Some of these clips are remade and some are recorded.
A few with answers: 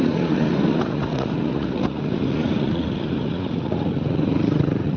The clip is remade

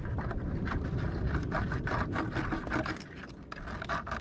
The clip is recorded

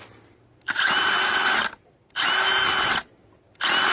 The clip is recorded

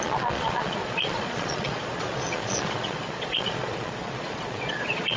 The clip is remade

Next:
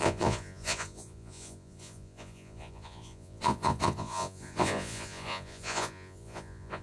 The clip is remade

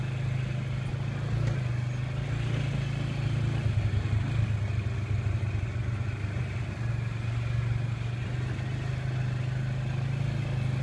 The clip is recorded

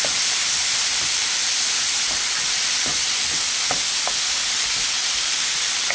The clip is recorded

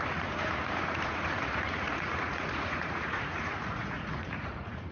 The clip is remade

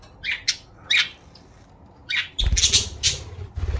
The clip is recorded